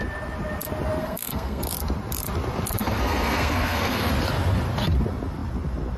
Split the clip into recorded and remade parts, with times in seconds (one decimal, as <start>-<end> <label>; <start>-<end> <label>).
0.0-1.0 recorded; 1.0-1.6 remade; 1.6-2.8 recorded; 2.8-4.1 remade; 4.1-6.0 recorded